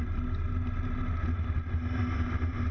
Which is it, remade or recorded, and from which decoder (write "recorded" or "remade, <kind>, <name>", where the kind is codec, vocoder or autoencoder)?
recorded